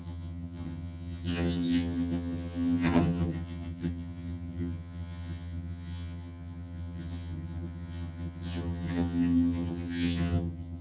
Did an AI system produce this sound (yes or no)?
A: yes